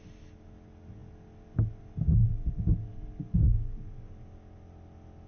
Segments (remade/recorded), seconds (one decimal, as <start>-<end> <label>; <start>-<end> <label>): 0.0-5.3 recorded